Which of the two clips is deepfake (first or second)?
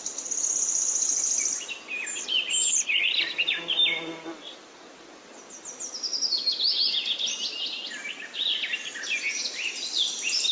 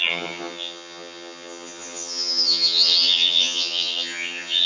second